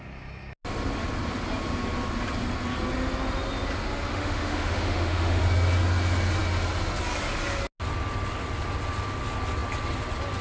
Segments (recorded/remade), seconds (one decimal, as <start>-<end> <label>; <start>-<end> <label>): 0.0-4.1 recorded; 4.1-5.4 remade; 5.4-10.4 recorded